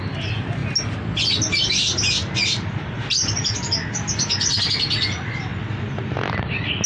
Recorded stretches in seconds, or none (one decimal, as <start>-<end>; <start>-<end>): 0.0-6.9